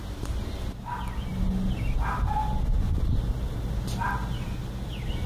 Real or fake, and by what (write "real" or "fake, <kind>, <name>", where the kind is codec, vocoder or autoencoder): real